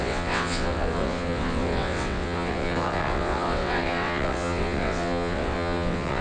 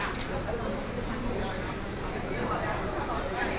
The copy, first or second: first